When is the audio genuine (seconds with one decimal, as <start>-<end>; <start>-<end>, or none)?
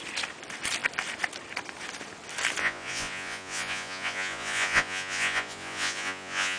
0.0-2.6